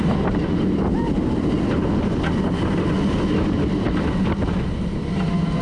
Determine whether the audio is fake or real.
real